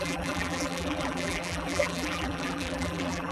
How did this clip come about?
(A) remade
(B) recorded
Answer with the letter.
A